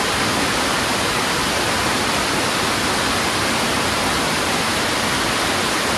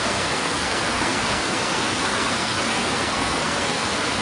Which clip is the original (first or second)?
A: first